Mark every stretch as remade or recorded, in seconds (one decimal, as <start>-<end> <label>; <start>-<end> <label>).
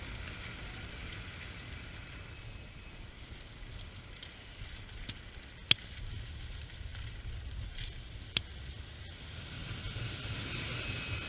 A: 0.0-11.3 recorded